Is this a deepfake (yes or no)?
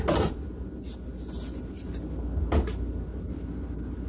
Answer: no